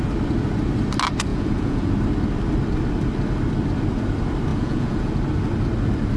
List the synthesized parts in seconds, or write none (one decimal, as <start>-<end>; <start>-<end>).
1.3-1.9; 4.5-5.1